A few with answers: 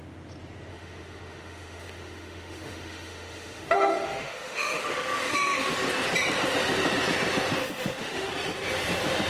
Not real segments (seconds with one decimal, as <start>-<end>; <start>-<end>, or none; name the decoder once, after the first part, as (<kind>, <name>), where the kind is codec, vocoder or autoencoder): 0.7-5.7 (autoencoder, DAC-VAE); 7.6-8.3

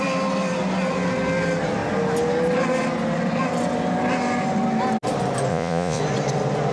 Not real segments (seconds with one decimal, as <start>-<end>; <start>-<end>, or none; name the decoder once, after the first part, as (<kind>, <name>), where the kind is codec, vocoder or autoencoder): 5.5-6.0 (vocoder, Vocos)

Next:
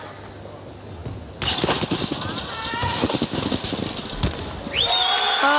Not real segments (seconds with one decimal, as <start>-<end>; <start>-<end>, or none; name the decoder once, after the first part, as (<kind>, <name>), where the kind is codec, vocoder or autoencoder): none

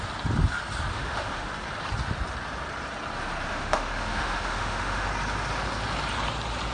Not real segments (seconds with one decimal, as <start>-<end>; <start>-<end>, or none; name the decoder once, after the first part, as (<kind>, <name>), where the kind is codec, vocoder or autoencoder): 0.9-1.5 (autoencoder, DAC-VAE); 3.5-5.1

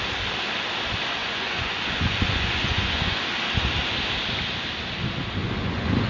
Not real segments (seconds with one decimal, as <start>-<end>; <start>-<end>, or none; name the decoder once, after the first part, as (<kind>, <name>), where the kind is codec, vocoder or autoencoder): 1.2-3.2 (vocoder, Vocos); 5.4-6.1

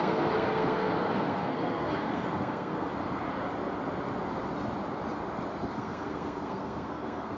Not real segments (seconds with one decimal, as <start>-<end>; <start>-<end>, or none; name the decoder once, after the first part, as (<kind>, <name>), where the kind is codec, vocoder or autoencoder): 0.0-2.9 (codec, SNAC); 5.7-7.4